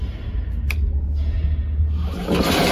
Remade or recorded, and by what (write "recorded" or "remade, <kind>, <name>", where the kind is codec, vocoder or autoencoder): recorded